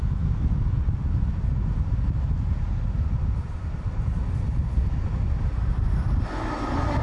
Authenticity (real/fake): real